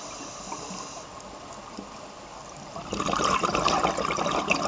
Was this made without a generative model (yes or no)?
yes